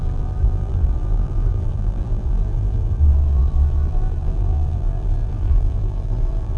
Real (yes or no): no